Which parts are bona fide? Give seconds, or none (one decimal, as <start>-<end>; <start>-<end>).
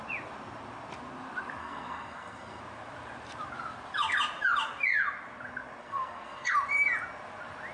0.0-1.6; 2.6-5.8; 6.5-7.7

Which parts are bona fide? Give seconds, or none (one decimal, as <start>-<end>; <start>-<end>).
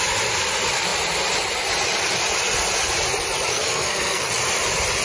0.0-3.5; 4.3-5.0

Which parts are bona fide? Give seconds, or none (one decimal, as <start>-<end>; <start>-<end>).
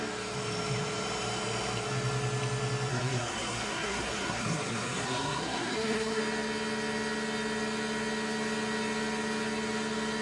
0.0-2.9; 6.2-10.2